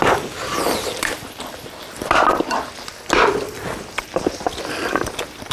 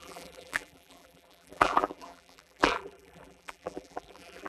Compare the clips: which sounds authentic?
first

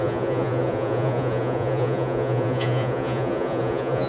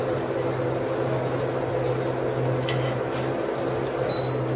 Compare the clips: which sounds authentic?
second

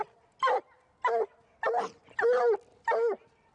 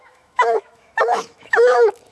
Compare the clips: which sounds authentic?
first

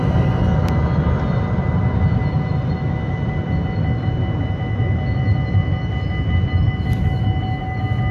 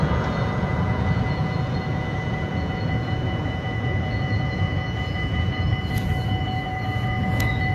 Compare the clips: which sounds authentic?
first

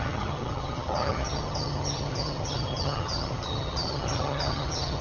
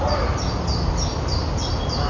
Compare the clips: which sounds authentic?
second